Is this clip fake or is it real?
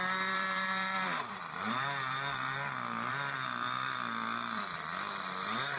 fake